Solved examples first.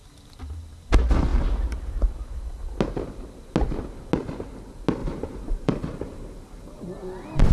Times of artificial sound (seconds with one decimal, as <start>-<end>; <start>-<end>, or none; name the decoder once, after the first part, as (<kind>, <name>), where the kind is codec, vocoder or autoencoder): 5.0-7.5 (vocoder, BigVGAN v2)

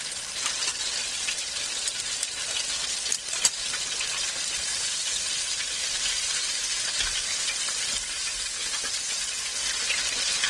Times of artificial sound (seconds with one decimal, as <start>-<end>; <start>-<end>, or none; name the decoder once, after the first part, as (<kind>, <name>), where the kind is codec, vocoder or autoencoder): 0.0-10.5 (vocoder, BigVGAN v2)

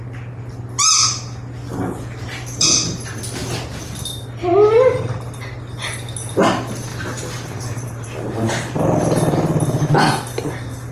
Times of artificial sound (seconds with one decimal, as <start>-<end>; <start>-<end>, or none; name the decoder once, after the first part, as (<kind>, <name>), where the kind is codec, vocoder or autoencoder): 6.9-8.7 (vocoder, BigVGAN v2)

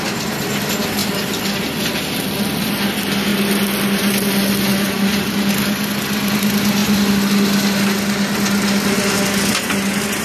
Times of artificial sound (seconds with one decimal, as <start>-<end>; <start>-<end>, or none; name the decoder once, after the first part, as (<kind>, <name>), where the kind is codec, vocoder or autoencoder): none

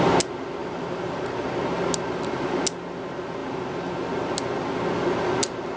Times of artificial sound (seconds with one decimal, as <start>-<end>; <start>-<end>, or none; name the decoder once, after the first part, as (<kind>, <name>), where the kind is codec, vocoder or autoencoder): 0.6-1.2 (vocoder, BigVGAN v2); 3.4-3.9

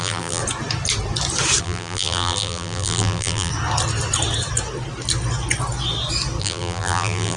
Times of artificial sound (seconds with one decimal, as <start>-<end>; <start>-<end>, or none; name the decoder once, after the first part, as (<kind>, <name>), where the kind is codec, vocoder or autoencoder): 0.0-0.4 (vocoder, BigVGAN v2); 1.6-3.5; 6.4-7.4

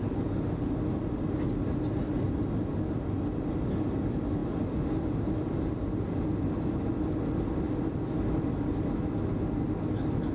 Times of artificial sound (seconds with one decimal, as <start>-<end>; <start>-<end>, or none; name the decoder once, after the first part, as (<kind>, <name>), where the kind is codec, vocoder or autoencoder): none

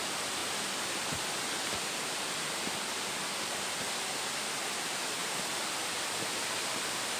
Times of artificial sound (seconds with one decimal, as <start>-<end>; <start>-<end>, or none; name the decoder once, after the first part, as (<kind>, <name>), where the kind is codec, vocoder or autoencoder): 0.0-0.4 (vocoder, BigVGAN v2); 2.5-7.2